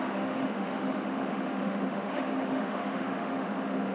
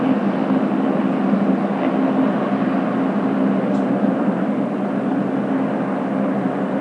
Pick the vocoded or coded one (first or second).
first